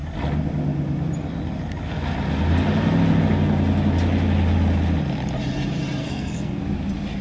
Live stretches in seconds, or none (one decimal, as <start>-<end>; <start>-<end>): 0.0-6.0; 6.6-7.2